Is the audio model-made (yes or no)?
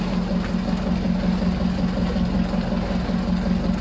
no